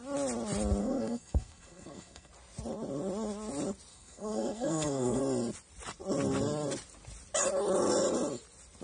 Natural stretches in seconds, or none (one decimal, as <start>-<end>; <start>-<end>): 0.0-0.8; 2.3-3.9; 5.2-8.8